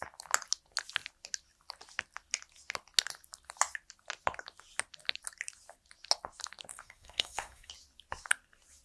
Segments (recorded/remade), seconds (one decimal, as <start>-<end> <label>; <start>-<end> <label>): 0.0-6.7 recorded; 6.7-7.7 remade; 7.7-8.8 recorded